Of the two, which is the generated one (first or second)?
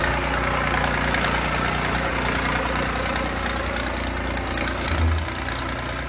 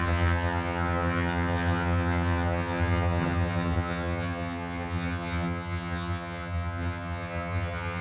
second